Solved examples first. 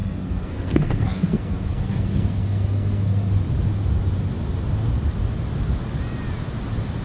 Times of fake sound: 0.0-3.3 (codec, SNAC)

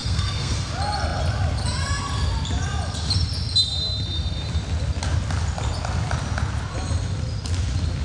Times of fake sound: 0.0-0.7 (codec, SNAC)

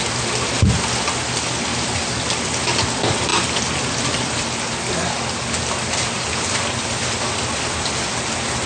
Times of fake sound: none

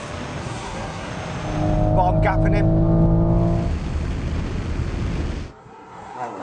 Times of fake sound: 0.4-1.1 (codec, SNAC); 5.6-6.4

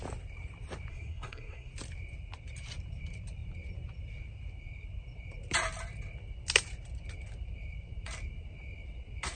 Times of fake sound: 0.9-1.7 (codec, SNAC)

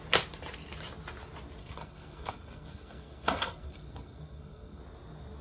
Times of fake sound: 1.6-4.8 (codec, SNAC)

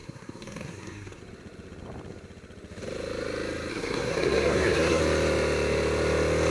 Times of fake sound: 0.0-1.2 (codec, SNAC); 3.7-5.0

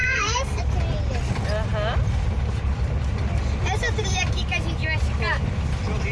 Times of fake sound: 0.0-0.6 (codec, SNAC)